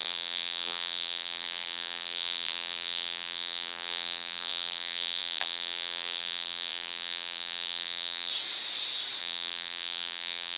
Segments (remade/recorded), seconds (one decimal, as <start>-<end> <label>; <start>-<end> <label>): 0.0-8.3 remade; 8.3-9.2 recorded; 9.2-10.6 remade